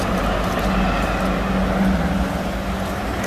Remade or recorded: recorded